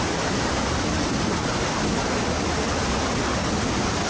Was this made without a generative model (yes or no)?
yes